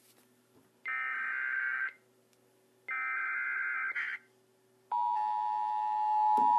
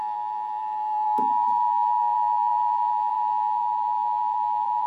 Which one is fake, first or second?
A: second